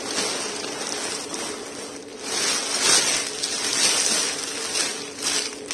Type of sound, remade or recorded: recorded